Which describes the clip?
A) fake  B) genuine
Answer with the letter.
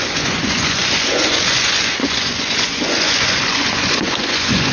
A